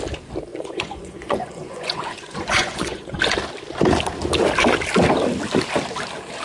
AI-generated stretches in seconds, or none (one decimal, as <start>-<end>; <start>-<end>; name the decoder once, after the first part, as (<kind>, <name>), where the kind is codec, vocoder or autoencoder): 0.5-3.2 (vocoder, Vocos)